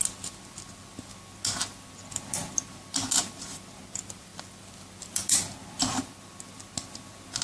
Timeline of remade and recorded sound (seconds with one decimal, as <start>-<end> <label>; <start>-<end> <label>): 0.0-7.4 recorded